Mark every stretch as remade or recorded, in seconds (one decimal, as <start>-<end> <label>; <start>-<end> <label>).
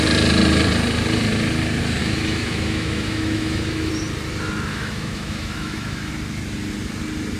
0.0-2.0 recorded; 2.0-3.9 remade; 3.9-4.7 recorded; 4.7-6.1 remade; 6.1-7.4 recorded